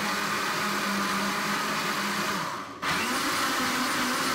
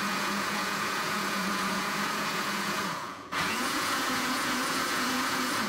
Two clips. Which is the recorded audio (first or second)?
first